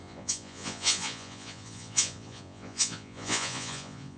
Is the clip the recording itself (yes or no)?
no